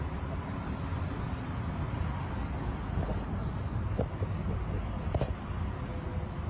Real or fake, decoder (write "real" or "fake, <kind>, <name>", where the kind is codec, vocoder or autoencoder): real